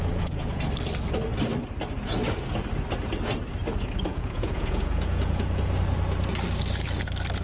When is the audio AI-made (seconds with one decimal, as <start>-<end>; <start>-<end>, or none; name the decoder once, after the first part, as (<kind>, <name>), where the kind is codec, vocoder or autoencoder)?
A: 0.0-0.6 (vocoder, Vocos); 4.1-5.8